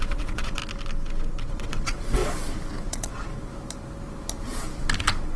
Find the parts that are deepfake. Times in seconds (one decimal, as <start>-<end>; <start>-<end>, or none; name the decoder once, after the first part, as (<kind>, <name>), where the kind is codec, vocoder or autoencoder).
0.0-0.6 (vocoder, WaveNeXt); 1.5-2.2; 2.8-3.3